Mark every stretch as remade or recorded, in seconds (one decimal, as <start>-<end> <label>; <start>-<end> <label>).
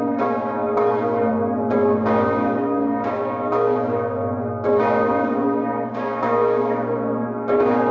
0.0-0.8 remade; 0.8-1.3 recorded; 1.3-7.9 remade